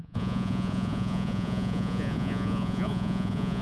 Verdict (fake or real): fake